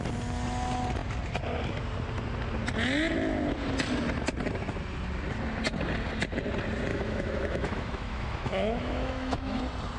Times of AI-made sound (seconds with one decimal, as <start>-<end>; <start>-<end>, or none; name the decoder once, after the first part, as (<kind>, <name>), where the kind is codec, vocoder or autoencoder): 6.9-9.6 (autoencoder, DAC-VAE)